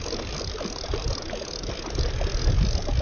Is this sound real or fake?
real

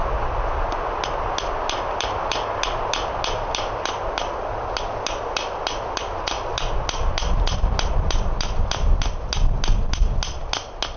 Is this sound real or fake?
real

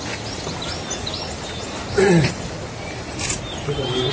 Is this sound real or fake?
real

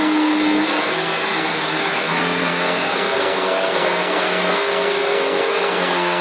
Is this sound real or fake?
fake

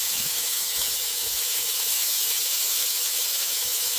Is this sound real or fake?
fake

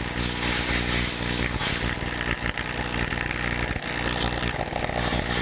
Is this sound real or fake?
real